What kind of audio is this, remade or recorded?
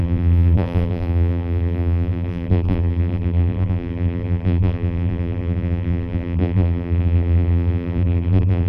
remade